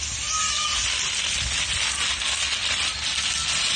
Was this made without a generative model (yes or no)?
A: yes